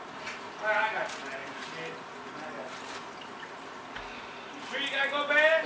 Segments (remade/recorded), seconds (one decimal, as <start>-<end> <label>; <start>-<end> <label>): 0.0-5.7 recorded